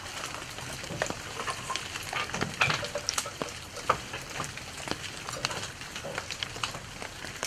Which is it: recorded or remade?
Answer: recorded